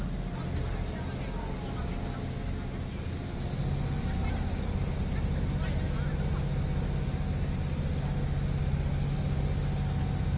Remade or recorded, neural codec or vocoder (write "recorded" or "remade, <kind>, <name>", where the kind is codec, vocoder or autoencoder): recorded